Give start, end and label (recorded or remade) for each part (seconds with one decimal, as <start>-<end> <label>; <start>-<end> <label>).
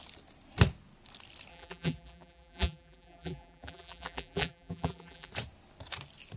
0.0-1.5 recorded; 1.5-5.3 remade; 5.3-6.4 recorded